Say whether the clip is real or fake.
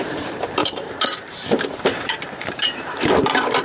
fake